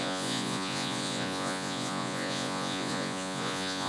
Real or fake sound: fake